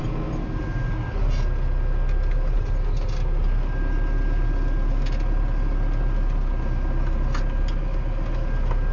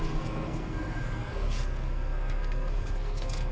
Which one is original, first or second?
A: first